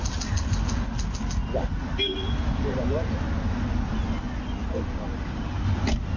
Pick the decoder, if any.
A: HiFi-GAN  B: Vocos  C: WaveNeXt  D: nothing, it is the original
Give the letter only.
D